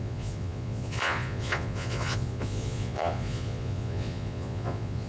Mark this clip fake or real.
fake